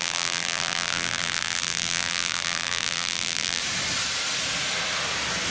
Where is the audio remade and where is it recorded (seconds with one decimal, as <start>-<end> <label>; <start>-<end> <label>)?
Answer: 0.0-3.6 remade; 3.6-5.5 recorded